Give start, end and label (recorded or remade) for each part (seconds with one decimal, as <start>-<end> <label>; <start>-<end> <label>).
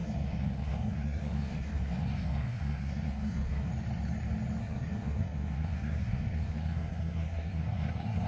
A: 0.0-3.7 remade; 3.7-4.6 recorded; 4.6-8.3 remade